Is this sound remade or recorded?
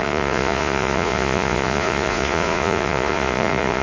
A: remade